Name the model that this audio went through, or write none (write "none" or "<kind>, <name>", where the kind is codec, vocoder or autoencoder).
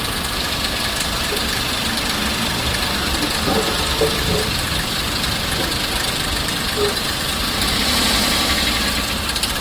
vocoder, BigVGAN v2